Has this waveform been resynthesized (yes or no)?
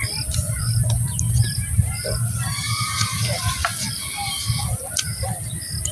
no